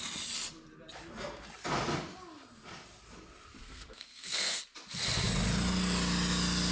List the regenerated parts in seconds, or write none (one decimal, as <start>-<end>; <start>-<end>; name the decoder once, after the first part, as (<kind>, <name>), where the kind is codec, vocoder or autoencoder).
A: 3.6-4.6 (codec, SNAC)